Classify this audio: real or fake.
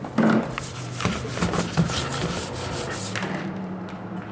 real